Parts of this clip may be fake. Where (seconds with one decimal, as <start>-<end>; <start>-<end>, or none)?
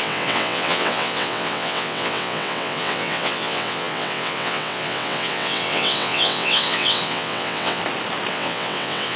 0.0-7.8; 8.3-9.2